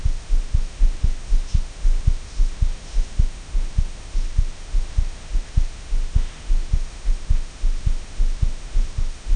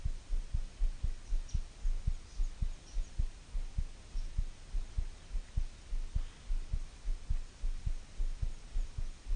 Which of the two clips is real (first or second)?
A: second